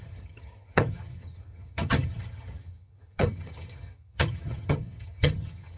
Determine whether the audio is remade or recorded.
remade